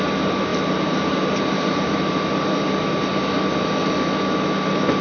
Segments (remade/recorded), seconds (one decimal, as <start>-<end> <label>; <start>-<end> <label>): 0.0-0.5 recorded; 0.5-2.0 remade; 2.0-5.0 recorded

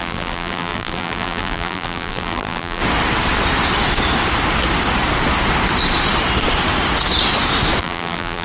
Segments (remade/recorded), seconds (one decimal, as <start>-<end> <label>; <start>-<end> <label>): 0.0-2.8 remade; 2.8-7.8 recorded; 7.8-8.4 remade

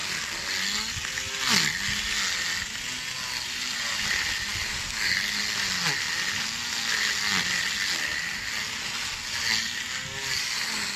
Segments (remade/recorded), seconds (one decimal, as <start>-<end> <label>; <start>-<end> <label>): 0.0-11.0 recorded

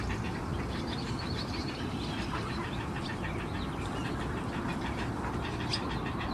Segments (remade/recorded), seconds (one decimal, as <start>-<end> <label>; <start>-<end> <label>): 0.0-0.5 recorded; 0.5-3.0 remade; 3.0-6.3 recorded

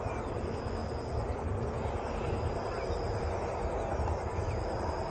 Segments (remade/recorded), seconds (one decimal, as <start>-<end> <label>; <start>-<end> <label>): 0.0-5.1 recorded